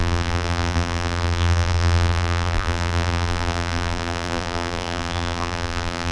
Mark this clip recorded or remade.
remade